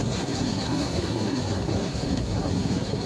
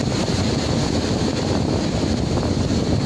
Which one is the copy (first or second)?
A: first